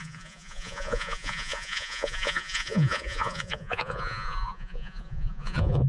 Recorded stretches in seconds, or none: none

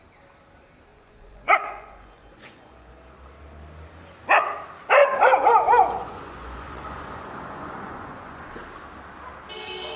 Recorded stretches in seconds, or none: 0.0-0.9; 2.9-5.0; 8.5-10.0

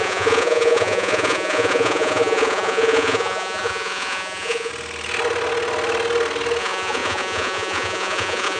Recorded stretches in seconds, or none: 4.7-6.6

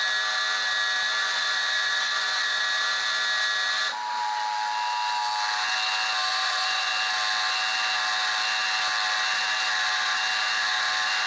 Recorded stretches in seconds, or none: 0.0-1.2; 2.6-6.3; 6.9-11.3

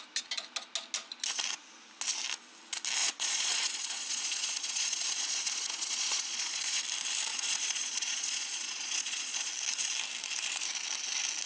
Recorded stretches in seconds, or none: 0.0-3.0; 6.8-7.3; 9.5-11.5

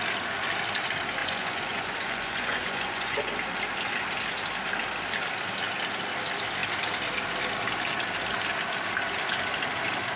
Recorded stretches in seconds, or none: 0.0-1.2; 3.3-10.2